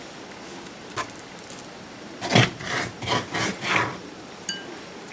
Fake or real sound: real